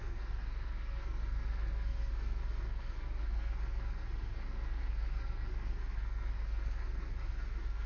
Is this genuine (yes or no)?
no